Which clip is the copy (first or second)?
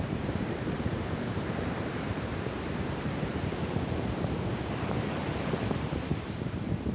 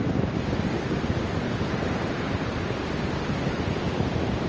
first